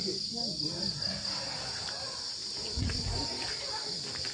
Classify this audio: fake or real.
real